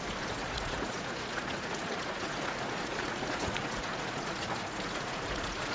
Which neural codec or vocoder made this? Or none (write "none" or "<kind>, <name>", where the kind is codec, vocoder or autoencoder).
vocoder, Vocos